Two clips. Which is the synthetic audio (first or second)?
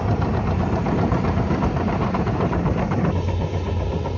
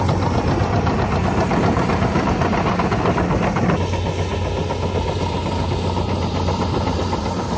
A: first